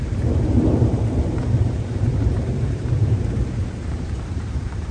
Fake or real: fake